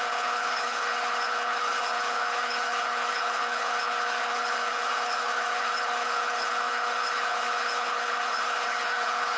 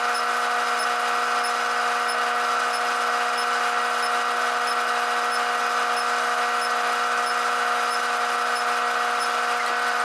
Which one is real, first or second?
second